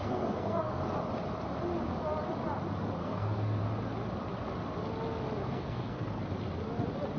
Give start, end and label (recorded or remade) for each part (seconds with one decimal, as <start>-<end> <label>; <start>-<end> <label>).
0.0-0.8 remade; 0.8-3.0 recorded; 3.0-3.6 remade; 3.6-5.4 recorded; 5.4-6.2 remade; 6.2-7.2 recorded